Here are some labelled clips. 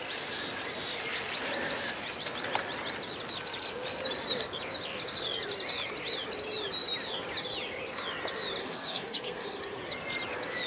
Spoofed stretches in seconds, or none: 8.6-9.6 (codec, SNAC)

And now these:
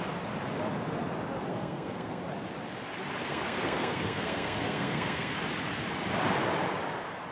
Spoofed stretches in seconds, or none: 1.5-2.2 (codec, SNAC); 3.2-5.4

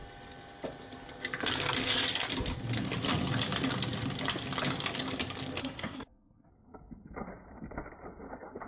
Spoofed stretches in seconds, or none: 5.6-6.5 (codec, SNAC)

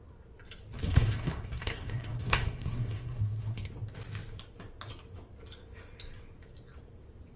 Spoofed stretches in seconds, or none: 0.8-3.7 (codec, SNAC)

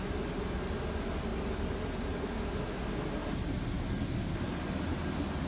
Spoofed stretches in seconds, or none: none

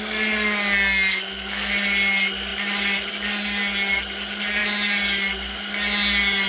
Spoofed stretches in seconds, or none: 1.1-1.7 (codec, SNAC)